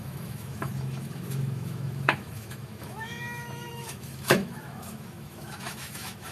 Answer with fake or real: fake